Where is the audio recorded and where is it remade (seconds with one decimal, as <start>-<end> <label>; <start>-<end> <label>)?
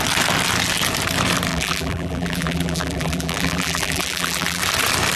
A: 0.0-1.5 recorded; 1.5-4.6 remade; 4.6-5.2 recorded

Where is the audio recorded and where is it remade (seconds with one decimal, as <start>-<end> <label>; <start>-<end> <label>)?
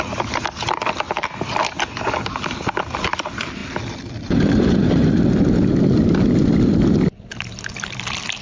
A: 0.0-8.4 remade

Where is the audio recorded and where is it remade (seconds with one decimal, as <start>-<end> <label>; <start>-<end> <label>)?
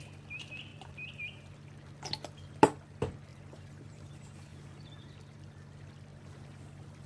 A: 0.0-0.7 recorded; 0.7-1.4 remade; 1.4-3.3 recorded; 3.3-4.1 remade; 4.1-4.5 recorded; 4.5-5.1 remade; 5.1-6.1 recorded; 6.1-6.6 remade; 6.6-7.1 recorded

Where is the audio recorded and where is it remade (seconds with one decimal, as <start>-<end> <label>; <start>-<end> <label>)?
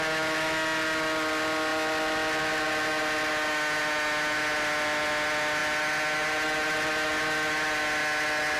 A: 0.0-8.6 recorded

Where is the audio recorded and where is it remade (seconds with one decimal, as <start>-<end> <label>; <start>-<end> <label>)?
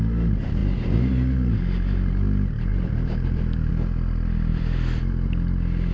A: 0.0-2.7 recorded; 2.7-3.7 remade; 3.7-4.5 recorded; 4.5-5.0 remade; 5.0-5.9 recorded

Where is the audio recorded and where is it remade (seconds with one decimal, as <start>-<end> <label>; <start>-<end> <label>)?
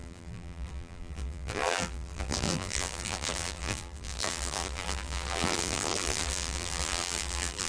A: 0.0-7.7 remade